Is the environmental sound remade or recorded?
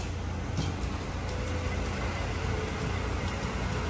recorded